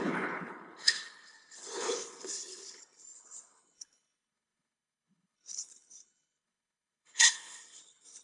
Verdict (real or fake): fake